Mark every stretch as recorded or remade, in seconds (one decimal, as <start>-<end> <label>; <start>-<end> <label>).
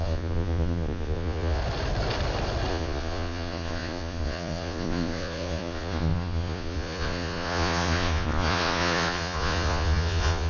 0.0-1.6 remade; 1.6-2.7 recorded; 2.7-10.5 remade